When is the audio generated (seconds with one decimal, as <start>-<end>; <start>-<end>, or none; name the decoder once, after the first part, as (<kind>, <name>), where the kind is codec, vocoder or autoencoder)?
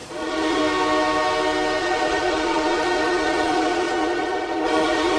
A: 0.0-0.6 (vocoder, Vocos); 1.8-5.2